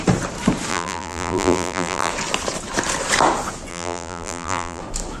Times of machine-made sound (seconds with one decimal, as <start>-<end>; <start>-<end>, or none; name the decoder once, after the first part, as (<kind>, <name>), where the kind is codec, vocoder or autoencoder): 0.7-2.1 (vocoder, BigVGAN v2); 3.7-4.8